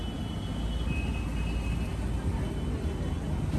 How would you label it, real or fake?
real